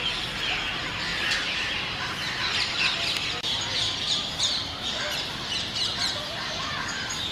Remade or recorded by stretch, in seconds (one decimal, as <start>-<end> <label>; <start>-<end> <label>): 0.0-7.3 recorded